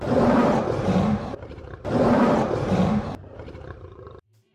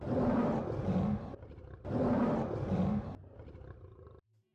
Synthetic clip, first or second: first